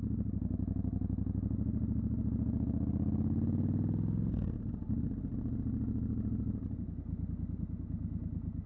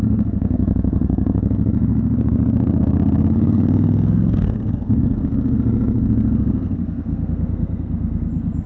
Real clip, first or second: first